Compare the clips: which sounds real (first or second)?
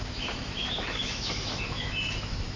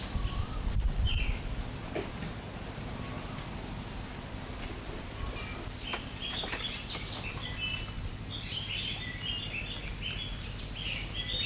second